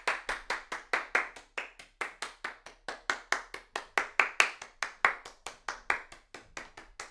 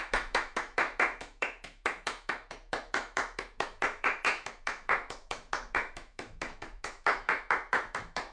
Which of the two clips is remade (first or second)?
second